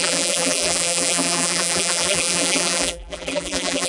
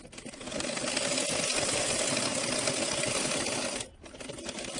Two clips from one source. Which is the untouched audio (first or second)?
second